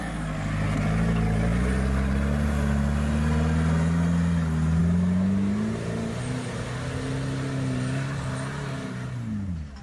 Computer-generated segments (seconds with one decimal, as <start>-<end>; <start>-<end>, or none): none